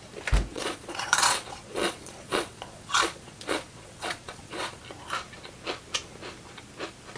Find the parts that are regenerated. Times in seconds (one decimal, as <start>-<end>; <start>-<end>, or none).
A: 0.5-4.8